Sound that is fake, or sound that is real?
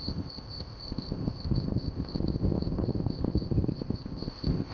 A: fake